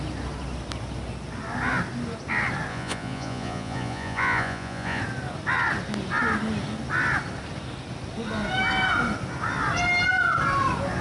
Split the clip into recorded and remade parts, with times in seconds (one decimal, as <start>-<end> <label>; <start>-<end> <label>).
0.0-2.7 recorded; 2.7-5.0 remade; 5.0-11.0 recorded